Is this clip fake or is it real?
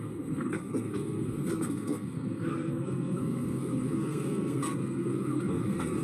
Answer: fake